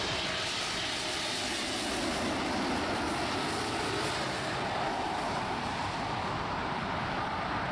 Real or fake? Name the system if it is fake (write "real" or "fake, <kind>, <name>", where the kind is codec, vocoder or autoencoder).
real